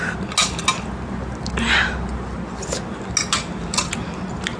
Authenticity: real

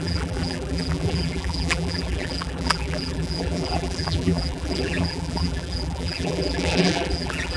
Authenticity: fake